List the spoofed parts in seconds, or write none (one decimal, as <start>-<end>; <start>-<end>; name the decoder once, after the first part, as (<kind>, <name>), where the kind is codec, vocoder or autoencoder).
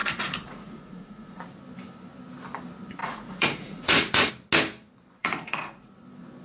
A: 0.0-1.4 (vocoder, Vocos); 3.0-4.3; 5.2-5.9